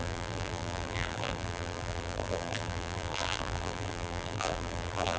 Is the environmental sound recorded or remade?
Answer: remade